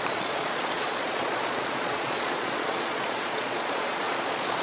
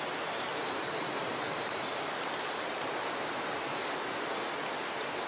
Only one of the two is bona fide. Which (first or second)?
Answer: second